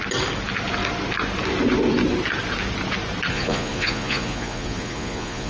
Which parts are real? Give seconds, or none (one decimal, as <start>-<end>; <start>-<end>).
0.0-3.3